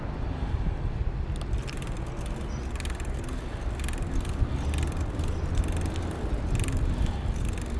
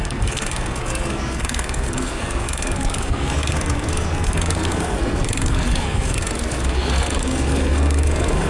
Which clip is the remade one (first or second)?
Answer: second